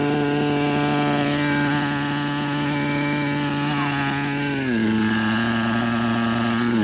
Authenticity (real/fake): real